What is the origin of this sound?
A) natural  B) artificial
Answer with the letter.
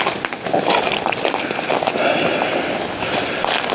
A